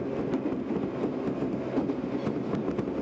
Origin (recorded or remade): recorded